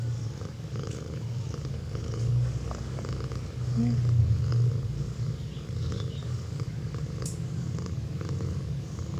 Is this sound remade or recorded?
remade